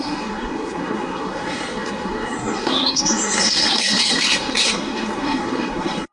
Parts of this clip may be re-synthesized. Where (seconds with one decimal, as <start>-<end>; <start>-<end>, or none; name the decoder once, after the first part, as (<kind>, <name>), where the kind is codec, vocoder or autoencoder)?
0.0-6.1 (codec, SNAC)